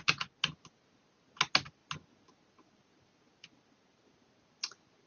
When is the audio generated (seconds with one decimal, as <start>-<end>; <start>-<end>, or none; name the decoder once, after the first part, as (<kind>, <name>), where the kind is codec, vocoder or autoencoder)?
none

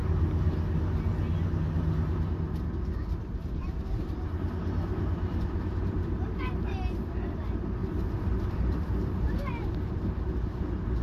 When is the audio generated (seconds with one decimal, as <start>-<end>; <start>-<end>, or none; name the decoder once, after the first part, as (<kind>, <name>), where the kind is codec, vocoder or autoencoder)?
4.9-6.6 (vocoder, BigVGAN v2); 7.8-9.2

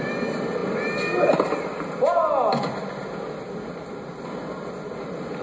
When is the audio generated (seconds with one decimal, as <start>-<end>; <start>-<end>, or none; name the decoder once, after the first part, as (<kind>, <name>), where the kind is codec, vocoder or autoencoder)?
none

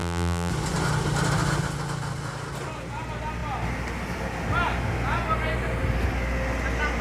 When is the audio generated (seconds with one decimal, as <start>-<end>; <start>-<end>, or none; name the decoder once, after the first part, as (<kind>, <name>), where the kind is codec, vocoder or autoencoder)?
0.0-0.5 (vocoder, BigVGAN v2)

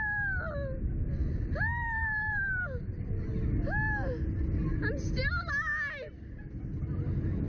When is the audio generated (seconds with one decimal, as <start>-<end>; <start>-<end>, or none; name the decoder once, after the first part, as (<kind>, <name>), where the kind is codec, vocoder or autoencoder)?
1.2-2.6 (vocoder, BigVGAN v2)

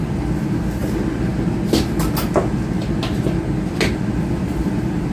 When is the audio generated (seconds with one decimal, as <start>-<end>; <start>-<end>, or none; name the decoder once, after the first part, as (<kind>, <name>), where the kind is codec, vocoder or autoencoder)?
0.0-0.8 (vocoder, BigVGAN v2); 3.9-5.1

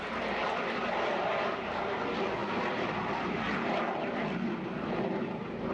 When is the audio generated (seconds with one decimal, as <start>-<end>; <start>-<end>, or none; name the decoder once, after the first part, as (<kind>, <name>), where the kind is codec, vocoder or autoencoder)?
2.4-3.8 (vocoder, BigVGAN v2)

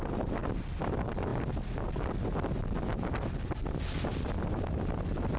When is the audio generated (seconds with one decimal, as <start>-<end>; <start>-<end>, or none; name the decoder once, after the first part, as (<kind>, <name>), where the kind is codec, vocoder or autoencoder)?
0.0-1.3 (vocoder, BigVGAN v2); 4.5-5.4